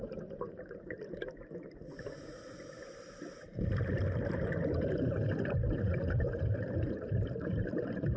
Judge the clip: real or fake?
fake